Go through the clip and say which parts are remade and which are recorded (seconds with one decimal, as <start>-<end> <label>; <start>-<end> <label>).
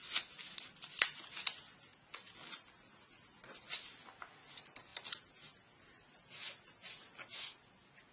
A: 0.0-8.1 recorded